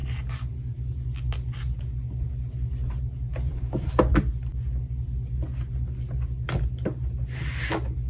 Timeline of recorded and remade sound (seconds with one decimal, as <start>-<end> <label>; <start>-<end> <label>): 0.0-3.3 recorded; 3.3-4.0 remade; 4.0-8.1 recorded